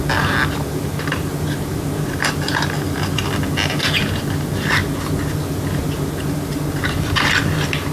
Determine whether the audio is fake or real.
real